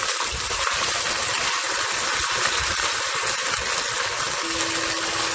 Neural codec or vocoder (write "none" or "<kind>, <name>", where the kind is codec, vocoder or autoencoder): none